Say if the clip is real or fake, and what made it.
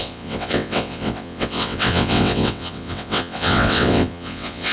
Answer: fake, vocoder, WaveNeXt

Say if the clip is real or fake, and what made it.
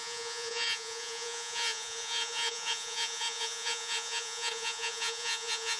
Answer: fake, vocoder, Vocos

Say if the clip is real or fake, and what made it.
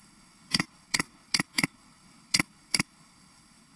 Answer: fake, codec, HILCodec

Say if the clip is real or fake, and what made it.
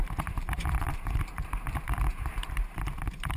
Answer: fake, vocoder, BigVGAN v2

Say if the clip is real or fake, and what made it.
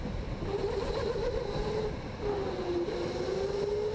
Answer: real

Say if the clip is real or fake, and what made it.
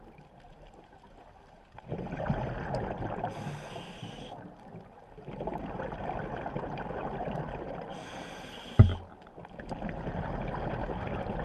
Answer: real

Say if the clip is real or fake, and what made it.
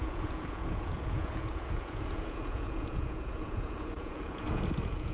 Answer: fake, vocoder, Vocos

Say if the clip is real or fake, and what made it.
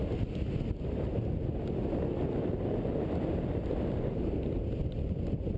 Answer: real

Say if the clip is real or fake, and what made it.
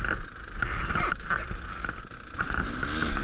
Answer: real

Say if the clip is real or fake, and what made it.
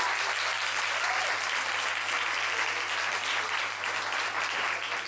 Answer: real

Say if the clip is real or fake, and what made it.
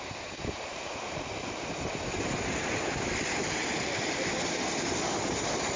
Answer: real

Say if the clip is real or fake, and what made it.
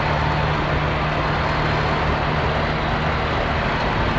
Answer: real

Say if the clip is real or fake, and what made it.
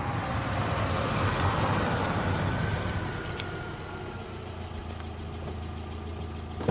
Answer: real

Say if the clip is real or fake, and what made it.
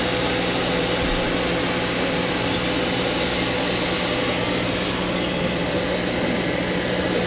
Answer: real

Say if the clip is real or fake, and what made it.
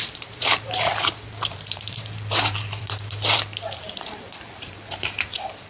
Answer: fake, vocoder, BigVGAN v2